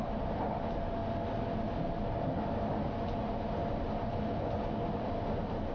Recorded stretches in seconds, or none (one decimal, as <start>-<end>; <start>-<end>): 0.0-5.7